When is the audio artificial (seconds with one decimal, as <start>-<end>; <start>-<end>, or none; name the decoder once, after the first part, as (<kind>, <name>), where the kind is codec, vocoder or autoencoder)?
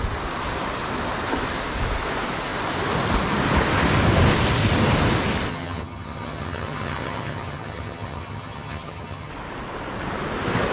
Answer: 5.5-9.3 (vocoder, HiFi-GAN)